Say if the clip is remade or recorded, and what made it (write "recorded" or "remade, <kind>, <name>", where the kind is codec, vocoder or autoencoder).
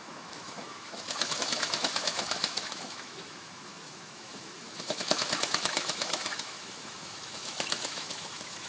remade, autoencoder, DAC-VAE